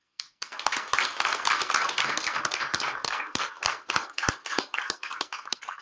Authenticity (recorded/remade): remade